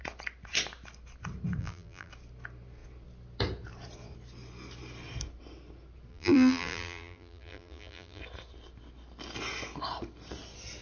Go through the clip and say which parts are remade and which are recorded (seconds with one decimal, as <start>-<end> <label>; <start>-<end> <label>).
0.0-1.6 recorded; 1.6-2.1 remade; 2.1-6.1 recorded; 6.1-8.2 remade; 8.2-10.8 recorded